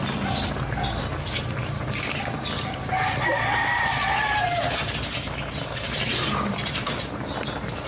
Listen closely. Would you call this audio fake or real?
fake